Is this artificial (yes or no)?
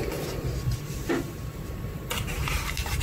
yes